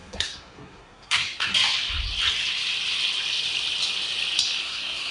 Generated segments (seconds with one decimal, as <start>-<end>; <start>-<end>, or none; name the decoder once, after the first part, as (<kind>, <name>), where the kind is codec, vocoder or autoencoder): 0.0-1.5 (codec, SNAC); 4.6-5.1